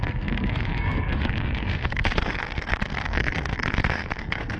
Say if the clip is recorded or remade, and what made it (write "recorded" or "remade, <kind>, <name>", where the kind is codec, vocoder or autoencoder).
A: remade, codec, SNAC